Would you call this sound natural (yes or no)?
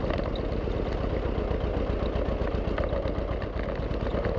yes